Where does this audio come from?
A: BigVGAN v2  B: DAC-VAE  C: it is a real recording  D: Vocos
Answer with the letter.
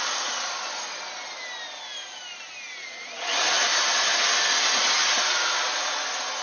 C